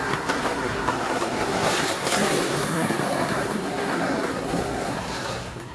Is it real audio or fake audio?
fake